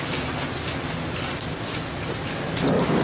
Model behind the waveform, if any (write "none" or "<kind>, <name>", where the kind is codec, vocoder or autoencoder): none